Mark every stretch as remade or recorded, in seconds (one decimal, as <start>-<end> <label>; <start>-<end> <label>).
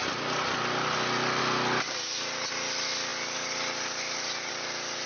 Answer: 0.0-5.1 recorded